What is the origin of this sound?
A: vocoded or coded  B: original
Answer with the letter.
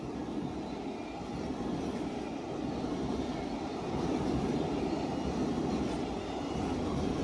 B